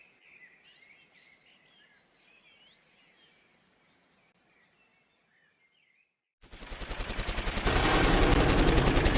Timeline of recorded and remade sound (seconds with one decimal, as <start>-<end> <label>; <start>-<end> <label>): 0.0-9.2 recorded